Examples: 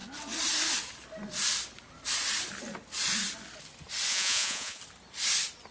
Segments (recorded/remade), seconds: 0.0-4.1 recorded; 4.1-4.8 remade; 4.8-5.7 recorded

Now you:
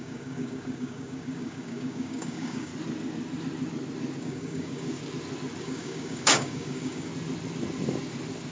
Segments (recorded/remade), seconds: 0.0-2.7 remade; 2.7-4.2 recorded; 4.2-5.0 remade; 5.0-5.6 recorded; 5.6-7.1 remade; 7.1-8.5 recorded

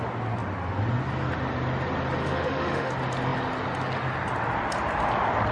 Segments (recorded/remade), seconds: 0.0-2.2 recorded; 2.2-2.9 remade; 2.9-5.5 recorded

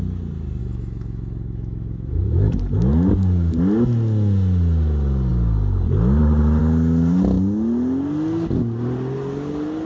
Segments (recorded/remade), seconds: 0.0-0.6 recorded; 0.6-2.6 remade; 2.6-9.9 recorded

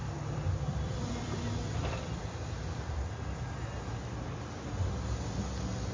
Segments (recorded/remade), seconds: 0.0-3.5 remade; 3.5-5.9 recorded

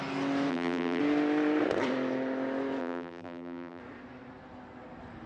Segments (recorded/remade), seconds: 0.0-0.5 recorded; 0.5-1.0 remade; 1.0-2.8 recorded; 2.8-3.8 remade; 3.8-5.3 recorded